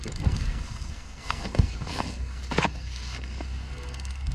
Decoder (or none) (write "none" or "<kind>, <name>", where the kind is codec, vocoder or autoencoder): codec, SNAC